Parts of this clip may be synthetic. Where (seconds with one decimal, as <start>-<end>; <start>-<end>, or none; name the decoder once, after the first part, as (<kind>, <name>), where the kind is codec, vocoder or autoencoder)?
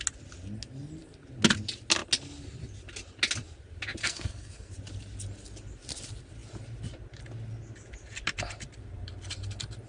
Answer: 4.0-4.7 (codec, SNAC)